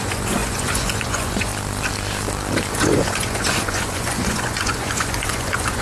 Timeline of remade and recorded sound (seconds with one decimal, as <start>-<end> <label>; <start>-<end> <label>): 0.0-1.5 remade; 1.5-2.7 recorded; 2.7-5.8 remade